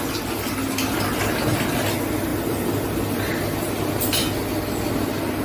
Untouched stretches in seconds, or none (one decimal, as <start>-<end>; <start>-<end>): 0.0-2.3; 3.2-5.4